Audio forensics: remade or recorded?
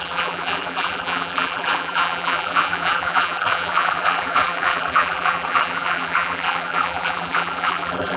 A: remade